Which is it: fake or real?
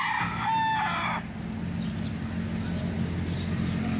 real